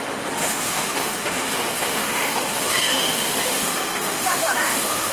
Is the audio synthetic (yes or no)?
yes